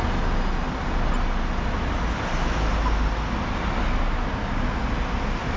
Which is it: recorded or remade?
recorded